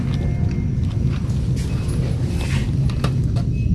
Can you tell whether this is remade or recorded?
recorded